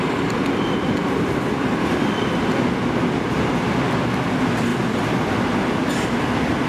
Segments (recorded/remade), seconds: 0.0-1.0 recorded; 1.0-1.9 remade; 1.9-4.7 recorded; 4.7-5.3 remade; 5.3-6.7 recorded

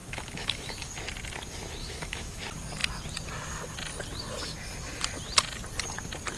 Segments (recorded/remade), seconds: 0.0-0.9 remade; 0.9-1.8 recorded; 1.8-2.4 remade; 2.4-6.4 recorded

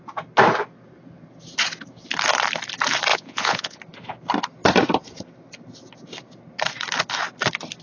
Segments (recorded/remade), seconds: 0.0-3.1 recorded; 3.1-3.8 remade; 3.8-7.8 recorded

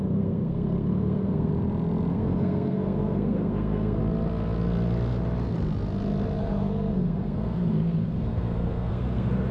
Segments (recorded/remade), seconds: 0.0-1.5 remade; 1.5-2.1 recorded; 2.1-4.0 remade; 4.0-6.4 recorded; 6.4-9.5 remade

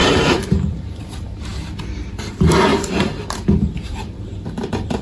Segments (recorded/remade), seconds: 0.0-1.0 remade; 1.0-2.7 recorded; 2.7-3.2 remade; 3.2-5.0 recorded

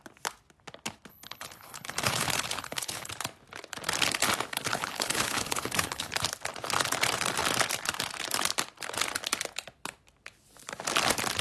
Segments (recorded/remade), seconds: 0.0-1.1 recorded; 1.1-3.1 remade; 3.1-4.7 recorded; 4.7-6.1 remade; 6.1-11.4 recorded

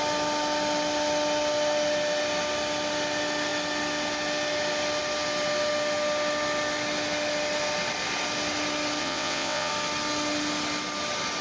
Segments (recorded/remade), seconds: 0.0-9.0 recorded; 9.0-9.7 remade; 9.7-11.4 recorded